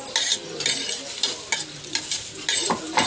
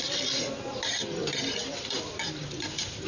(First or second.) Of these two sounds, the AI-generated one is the second